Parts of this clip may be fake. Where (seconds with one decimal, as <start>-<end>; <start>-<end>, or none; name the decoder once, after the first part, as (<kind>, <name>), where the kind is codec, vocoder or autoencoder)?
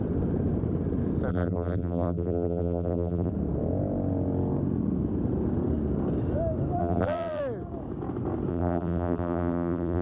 1.3-3.3 (vocoder, BigVGAN v2); 6.8-7.4; 8.5-10.0